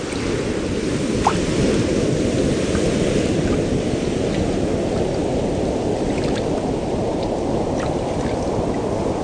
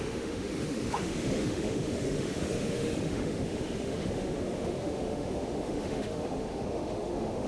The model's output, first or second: second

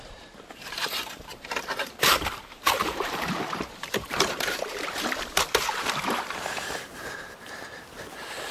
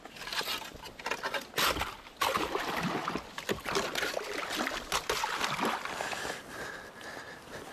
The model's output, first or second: first